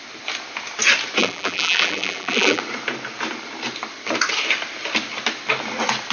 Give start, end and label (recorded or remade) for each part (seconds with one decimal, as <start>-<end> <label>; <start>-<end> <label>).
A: 0.0-1.2 recorded; 1.2-2.6 remade; 2.6-6.1 recorded